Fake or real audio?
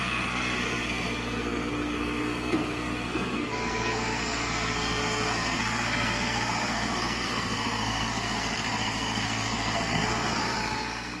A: fake